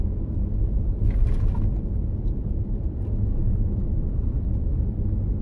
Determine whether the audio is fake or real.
real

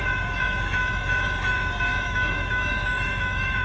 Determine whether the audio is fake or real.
fake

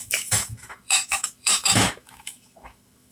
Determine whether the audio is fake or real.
fake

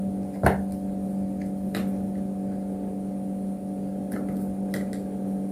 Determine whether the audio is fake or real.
real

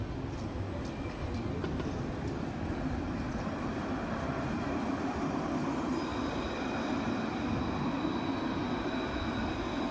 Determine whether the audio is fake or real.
real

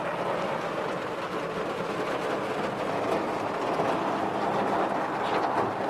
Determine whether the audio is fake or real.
real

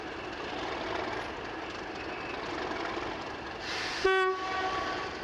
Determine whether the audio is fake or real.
real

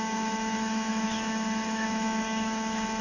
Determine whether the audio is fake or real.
fake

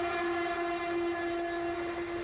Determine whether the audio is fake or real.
real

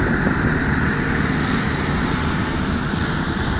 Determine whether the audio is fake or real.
real